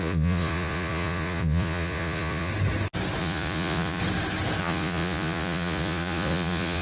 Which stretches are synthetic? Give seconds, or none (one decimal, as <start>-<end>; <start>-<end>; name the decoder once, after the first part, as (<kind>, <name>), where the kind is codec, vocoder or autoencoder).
0.0-2.5 (vocoder, Vocos); 3.2-4.0; 4.6-6.8